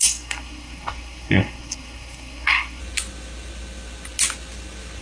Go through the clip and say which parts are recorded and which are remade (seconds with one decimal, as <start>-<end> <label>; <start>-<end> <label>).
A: 0.0-2.8 remade; 2.8-5.0 recorded

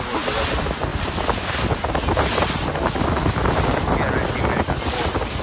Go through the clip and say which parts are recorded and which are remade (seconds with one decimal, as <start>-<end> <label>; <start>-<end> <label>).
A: 0.0-5.4 recorded

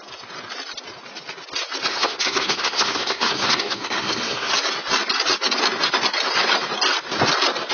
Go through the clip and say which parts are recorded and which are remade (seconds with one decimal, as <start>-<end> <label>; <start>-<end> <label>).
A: 0.0-1.9 recorded; 1.9-4.5 remade; 4.5-7.7 recorded

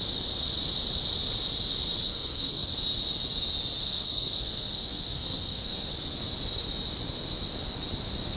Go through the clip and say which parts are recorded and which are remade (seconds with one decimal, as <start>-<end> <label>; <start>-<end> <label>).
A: 0.0-2.1 recorded; 2.1-2.7 remade; 2.7-3.8 recorded; 3.8-5.9 remade; 5.9-8.4 recorded

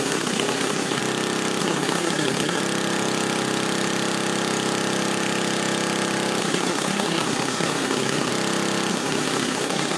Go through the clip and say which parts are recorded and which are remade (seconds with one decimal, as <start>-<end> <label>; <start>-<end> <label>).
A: 0.0-1.0 remade; 1.0-1.6 recorded; 1.6-2.6 remade; 2.6-6.4 recorded; 6.4-8.3 remade; 8.3-8.9 recorded; 8.9-10.0 remade